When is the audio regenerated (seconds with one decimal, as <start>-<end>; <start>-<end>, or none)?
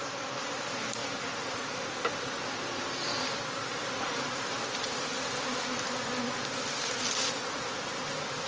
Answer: none